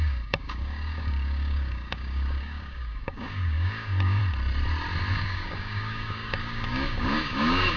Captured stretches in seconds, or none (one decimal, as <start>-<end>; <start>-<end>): 4.2-5.1